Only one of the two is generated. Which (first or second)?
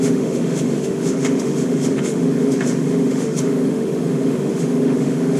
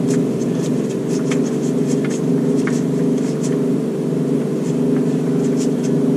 first